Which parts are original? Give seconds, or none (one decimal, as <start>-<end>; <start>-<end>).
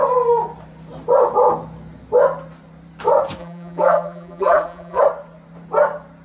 0.0-3.4; 5.0-6.2